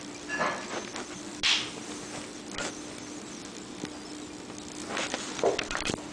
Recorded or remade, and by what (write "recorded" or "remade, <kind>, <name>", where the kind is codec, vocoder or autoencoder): recorded